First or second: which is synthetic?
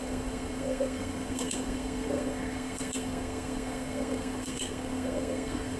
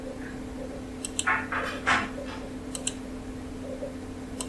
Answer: first